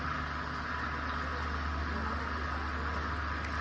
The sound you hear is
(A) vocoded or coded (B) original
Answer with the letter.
B